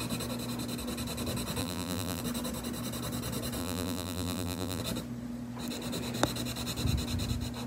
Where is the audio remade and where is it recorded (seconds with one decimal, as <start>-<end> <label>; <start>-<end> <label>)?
0.0-1.6 recorded; 1.6-2.2 remade; 2.2-3.6 recorded; 3.6-4.8 remade; 4.8-7.7 recorded